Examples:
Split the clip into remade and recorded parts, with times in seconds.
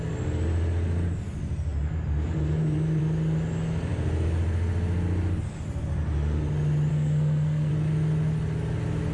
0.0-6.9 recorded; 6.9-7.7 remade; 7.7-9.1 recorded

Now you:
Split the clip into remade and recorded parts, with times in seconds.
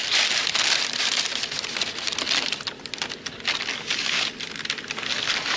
0.0-3.7 recorded; 3.7-4.3 remade; 4.3-5.6 recorded